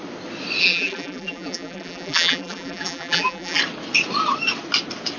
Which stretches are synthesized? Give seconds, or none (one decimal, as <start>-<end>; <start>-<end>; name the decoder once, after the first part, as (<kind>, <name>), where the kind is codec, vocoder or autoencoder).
0.6-3.6 (vocoder, BigVGAN v2)